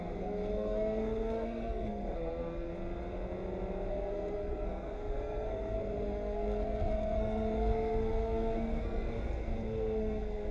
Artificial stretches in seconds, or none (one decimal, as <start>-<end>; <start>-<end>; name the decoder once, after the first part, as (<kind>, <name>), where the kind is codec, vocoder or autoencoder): 0.0-2.7 (codec, SNAC); 3.9-10.5